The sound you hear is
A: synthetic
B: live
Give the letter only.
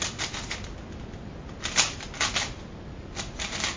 B